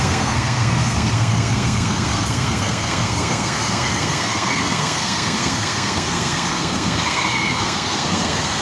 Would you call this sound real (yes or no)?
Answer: no